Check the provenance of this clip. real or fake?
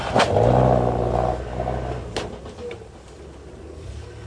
real